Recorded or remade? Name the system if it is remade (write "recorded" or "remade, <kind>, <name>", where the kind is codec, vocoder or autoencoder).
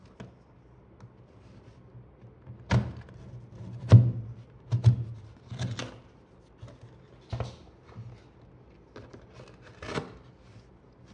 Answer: recorded